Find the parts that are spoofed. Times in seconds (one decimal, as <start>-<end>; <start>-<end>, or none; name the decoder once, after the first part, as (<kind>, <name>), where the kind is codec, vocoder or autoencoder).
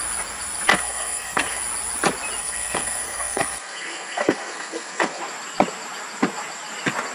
0.7-1.6 (codec, SNAC); 2.4-5.2